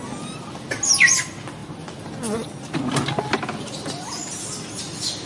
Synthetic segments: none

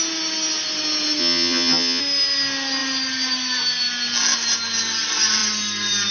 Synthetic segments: 1.2-2.0 (vocoder, HiFi-GAN)

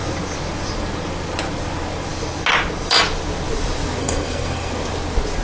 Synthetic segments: 4.0-4.7 (codec, SNAC)